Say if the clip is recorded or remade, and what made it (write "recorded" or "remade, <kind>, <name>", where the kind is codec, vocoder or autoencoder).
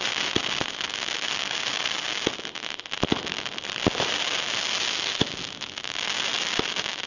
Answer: recorded